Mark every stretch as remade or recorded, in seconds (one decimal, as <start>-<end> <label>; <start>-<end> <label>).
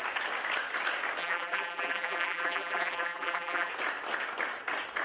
0.0-1.2 recorded; 1.2-3.7 remade; 3.7-5.0 recorded